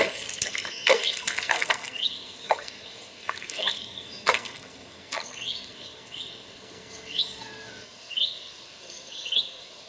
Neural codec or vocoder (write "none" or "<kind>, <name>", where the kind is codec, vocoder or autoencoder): codec, SNAC